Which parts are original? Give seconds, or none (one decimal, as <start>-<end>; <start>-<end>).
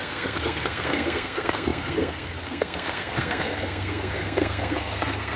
none